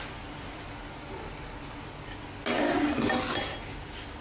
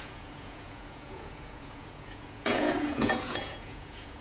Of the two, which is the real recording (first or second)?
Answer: first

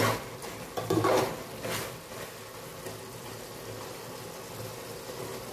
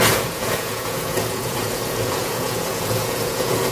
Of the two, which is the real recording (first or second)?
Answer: first